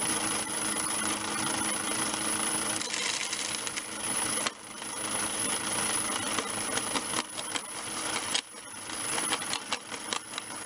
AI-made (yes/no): no